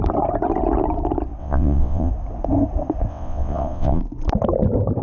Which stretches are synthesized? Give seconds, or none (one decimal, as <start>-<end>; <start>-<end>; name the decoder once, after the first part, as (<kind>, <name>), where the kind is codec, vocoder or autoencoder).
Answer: 1.4-2.1 (vocoder, WaveNeXt); 3.1-4.0